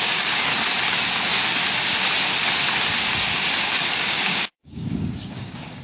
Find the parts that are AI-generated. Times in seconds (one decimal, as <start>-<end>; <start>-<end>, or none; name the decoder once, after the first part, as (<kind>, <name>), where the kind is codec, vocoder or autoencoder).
0.0-0.5 (codec, DAC); 3.5-5.8